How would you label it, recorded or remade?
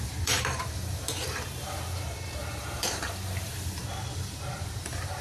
remade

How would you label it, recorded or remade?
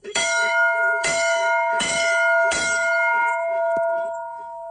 remade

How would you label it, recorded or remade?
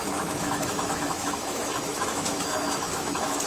remade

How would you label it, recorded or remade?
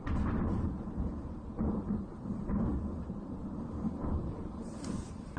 remade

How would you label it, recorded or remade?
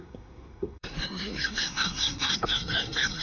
remade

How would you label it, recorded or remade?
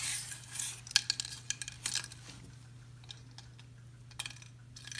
recorded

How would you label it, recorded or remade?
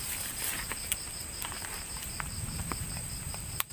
remade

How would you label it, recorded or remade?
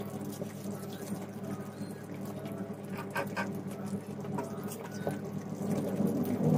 recorded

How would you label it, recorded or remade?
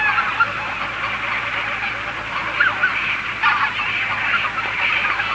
recorded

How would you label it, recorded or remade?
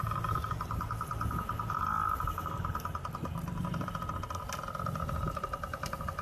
recorded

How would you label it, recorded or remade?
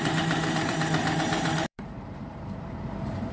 remade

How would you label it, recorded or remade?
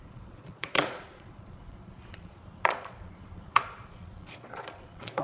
remade